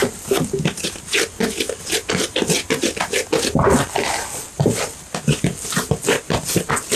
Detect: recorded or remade recorded